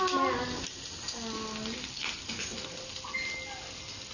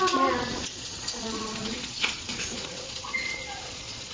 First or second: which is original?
first